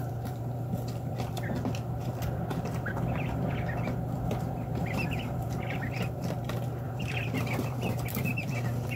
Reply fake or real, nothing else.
fake